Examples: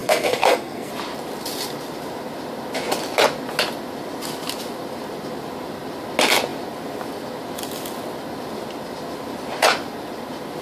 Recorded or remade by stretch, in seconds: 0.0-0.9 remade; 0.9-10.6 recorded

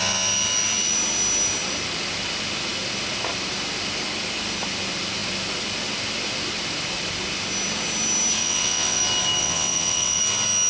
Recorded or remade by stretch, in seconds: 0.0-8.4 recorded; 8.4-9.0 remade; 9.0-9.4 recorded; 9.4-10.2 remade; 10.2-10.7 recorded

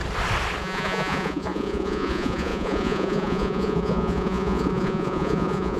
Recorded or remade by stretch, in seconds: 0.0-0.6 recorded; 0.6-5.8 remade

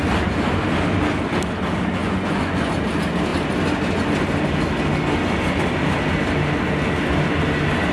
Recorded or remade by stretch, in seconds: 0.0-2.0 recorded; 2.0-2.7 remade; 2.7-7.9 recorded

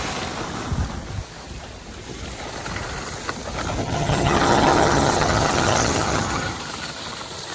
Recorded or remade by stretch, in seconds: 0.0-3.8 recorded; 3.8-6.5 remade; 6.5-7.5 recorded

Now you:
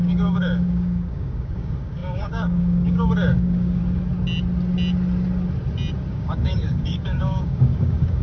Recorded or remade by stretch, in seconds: 0.0-3.8 remade; 3.8-6.1 recorded; 6.1-8.2 remade

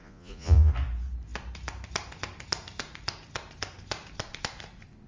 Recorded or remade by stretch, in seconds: 0.0-0.7 remade; 0.7-5.1 recorded